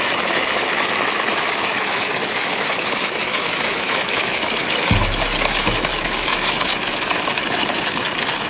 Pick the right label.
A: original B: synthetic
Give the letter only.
B